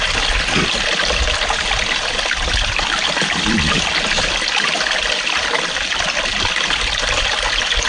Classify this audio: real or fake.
real